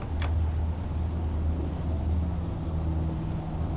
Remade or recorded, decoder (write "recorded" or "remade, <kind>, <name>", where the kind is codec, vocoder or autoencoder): recorded